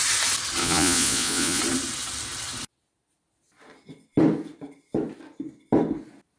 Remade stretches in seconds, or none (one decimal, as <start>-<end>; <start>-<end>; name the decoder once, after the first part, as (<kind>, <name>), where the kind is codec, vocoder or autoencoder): 0.6-1.6 (vocoder, Vocos)